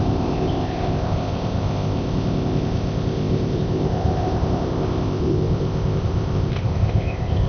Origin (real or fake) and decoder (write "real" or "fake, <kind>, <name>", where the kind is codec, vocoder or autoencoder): fake, codec, ZipCodec